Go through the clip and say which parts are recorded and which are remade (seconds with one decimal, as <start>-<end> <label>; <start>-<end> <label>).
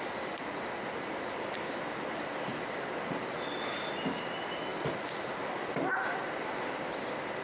0.0-7.4 recorded